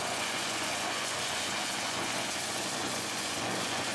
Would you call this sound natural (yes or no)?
no